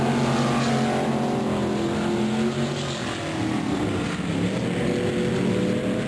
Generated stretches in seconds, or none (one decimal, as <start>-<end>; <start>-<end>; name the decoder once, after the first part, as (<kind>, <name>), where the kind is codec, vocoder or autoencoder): none